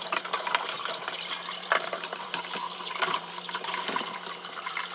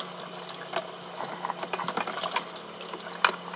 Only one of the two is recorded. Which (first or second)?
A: second